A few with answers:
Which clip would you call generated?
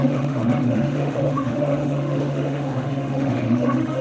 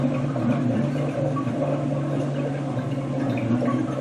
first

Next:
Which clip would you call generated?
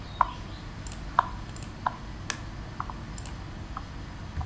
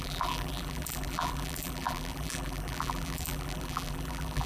second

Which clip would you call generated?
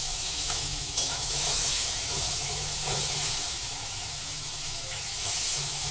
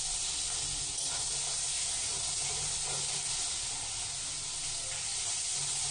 first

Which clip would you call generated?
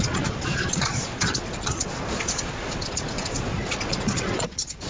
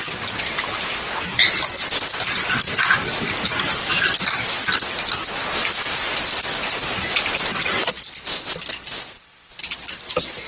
first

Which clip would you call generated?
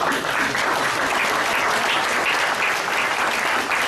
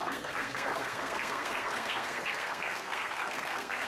second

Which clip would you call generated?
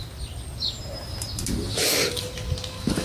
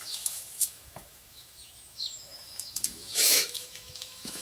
second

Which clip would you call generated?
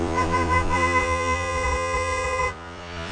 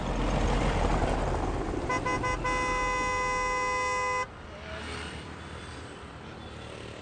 first